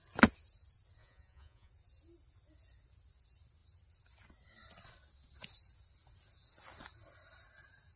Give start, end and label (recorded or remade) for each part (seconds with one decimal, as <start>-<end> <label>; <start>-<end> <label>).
0.0-1.0 recorded; 1.0-1.7 remade; 1.7-8.0 recorded